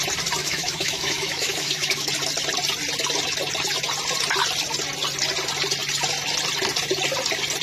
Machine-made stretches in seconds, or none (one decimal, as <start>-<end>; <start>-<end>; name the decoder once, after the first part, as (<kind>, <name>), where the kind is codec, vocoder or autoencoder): 0.4-2.1 (autoencoder, DAC-VAE)